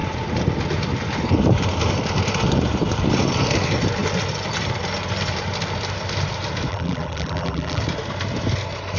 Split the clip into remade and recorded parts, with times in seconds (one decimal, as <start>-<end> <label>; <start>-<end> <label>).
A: 0.0-6.7 recorded; 6.7-7.8 remade; 7.8-9.0 recorded